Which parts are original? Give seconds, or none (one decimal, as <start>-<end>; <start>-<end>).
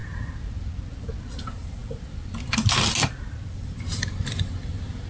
0.0-5.1